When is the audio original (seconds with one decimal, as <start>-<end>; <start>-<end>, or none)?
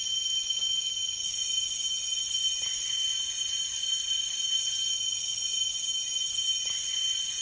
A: 0.0-3.0; 4.6-7.4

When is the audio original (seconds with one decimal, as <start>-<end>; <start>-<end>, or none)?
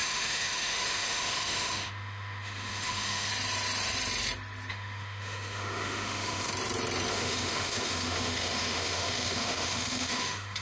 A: 3.3-4.7; 6.5-7.1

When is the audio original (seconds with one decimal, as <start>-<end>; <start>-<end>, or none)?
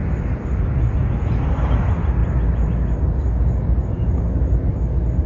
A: 0.0-5.3